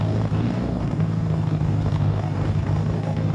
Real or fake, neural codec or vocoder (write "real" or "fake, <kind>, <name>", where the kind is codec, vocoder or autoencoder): fake, codec, DAC